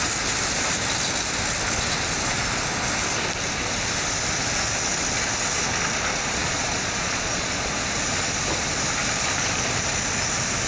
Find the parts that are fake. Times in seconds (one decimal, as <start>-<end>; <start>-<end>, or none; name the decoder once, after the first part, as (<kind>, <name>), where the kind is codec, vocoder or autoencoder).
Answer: 6.4-7.7 (vocoder, Vocos)